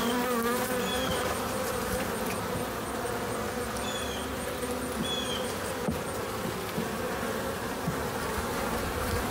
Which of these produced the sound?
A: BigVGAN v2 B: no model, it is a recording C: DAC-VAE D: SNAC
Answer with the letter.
B